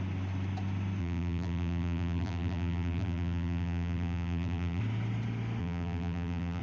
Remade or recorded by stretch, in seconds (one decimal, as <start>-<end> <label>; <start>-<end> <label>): 0.0-1.0 recorded; 1.0-4.8 remade; 4.8-5.6 recorded; 5.6-6.6 remade